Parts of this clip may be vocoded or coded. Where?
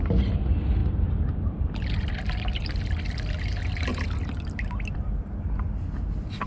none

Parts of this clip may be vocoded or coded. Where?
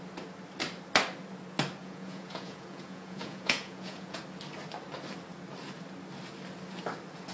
1.8-4.2 (vocoder, Vocos)